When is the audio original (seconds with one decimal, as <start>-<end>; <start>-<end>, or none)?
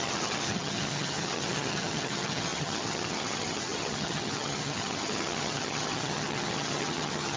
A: none